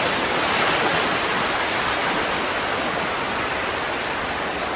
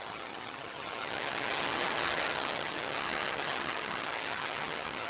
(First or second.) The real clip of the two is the first